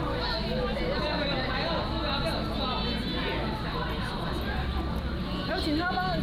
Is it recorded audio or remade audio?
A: recorded